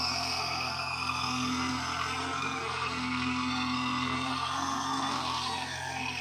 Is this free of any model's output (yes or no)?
no